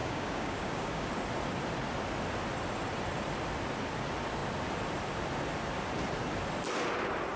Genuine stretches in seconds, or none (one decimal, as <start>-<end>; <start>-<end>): 1.1-7.4